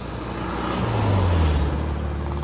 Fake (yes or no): no